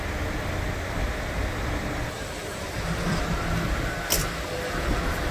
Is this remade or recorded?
recorded